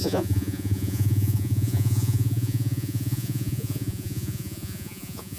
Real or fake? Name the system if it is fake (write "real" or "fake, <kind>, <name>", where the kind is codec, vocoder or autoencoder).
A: fake, vocoder, Vocos